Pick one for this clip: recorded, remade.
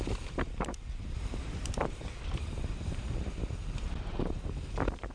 remade